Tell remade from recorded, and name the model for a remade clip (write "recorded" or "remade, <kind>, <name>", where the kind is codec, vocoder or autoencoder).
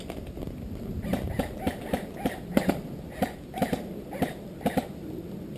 recorded